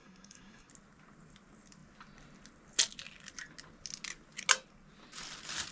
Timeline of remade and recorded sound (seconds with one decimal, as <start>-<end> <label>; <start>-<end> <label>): 0.0-0.7 remade; 0.7-5.7 recorded